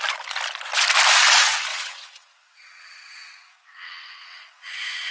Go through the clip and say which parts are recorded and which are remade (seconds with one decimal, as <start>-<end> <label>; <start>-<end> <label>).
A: 0.0-1.7 recorded; 1.7-5.1 remade